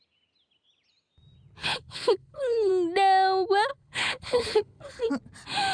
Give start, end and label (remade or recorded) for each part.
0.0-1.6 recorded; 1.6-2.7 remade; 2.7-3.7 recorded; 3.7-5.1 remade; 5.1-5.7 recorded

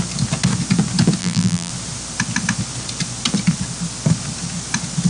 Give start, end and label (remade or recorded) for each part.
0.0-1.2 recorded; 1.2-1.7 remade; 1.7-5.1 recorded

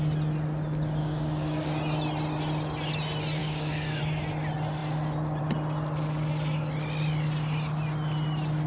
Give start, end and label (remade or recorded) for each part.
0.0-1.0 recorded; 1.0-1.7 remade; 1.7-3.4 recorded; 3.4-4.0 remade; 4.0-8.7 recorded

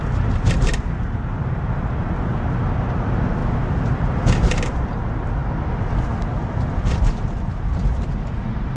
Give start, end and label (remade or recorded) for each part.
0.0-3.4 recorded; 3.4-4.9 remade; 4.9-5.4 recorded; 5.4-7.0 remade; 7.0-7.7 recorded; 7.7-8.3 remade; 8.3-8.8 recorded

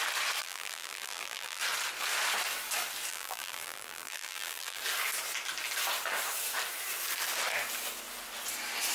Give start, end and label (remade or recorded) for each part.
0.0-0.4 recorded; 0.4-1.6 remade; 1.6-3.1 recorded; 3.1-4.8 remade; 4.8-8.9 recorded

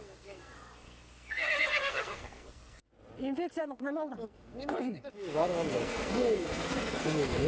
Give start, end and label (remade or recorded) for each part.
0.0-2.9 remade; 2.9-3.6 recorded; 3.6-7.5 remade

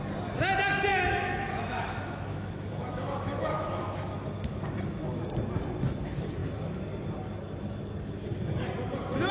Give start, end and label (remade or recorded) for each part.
0.0-0.9 recorded; 0.9-5.2 remade; 5.2-9.3 recorded

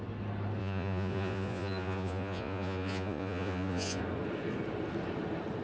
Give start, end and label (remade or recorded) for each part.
0.0-0.6 recorded; 0.6-4.0 remade; 4.0-5.6 recorded